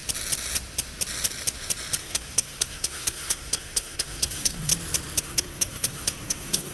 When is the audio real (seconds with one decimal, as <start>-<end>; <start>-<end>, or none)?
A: 0.0-2.0; 4.7-5.2